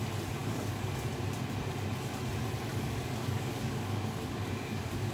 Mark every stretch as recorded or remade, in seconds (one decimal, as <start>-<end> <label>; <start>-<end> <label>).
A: 0.0-0.4 recorded; 0.4-1.1 remade; 1.1-2.7 recorded; 2.7-5.1 remade